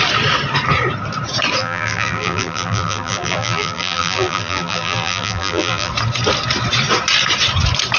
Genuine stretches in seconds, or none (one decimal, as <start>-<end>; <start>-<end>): 0.0-1.6; 5.9-8.0